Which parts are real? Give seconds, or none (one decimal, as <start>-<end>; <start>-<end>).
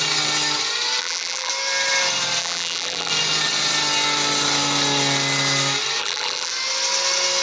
0.0-1.0; 1.5-2.4; 3.1-6.0; 6.5-7.4